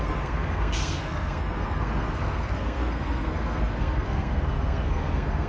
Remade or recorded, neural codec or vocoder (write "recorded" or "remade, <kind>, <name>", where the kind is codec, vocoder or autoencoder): remade, codec, SNAC